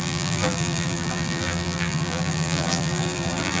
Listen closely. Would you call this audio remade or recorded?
remade